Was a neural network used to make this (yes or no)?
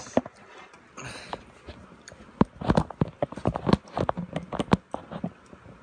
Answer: no